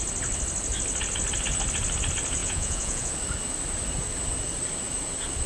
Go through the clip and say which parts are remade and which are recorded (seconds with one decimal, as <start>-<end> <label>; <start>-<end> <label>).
0.0-2.4 recorded; 2.4-3.1 remade; 3.1-5.5 recorded